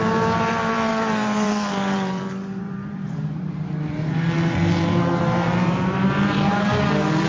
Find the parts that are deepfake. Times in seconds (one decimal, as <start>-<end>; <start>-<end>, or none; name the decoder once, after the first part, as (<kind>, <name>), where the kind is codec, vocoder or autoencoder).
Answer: 0.0-7.3 (vocoder, BigVGAN v2)

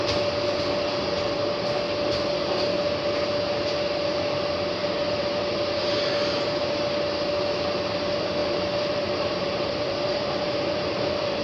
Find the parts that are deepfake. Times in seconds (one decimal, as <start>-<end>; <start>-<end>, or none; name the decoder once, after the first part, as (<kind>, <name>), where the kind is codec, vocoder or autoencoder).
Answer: 4.8-6.6 (vocoder, BigVGAN v2); 8.4-11.4

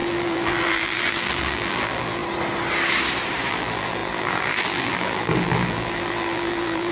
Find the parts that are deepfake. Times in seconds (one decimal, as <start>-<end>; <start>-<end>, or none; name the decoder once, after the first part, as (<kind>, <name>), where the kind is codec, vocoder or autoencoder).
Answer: 0.0-2.2 (vocoder, BigVGAN v2); 3.5-6.9

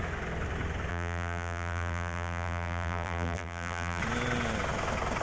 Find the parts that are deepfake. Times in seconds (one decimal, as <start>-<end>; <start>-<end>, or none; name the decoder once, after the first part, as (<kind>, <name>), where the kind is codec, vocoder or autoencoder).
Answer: 0.9-4.0 (vocoder, BigVGAN v2)

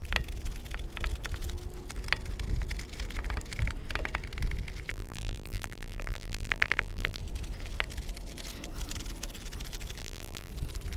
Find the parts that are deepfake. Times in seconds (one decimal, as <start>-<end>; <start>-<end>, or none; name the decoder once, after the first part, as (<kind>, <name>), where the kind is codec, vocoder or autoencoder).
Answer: 4.9-7.2 (vocoder, BigVGAN v2); 10.0-10.5

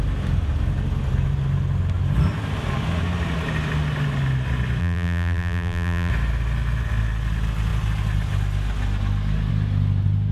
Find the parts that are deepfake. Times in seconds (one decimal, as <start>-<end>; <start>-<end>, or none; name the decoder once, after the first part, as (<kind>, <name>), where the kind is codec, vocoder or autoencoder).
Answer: 4.8-6.1 (vocoder, BigVGAN v2)